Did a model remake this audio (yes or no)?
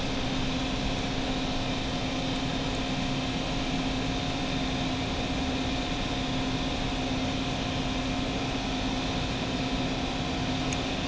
no